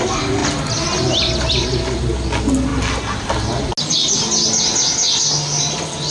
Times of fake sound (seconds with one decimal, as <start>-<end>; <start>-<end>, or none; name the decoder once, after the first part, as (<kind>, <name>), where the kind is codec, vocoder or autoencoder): none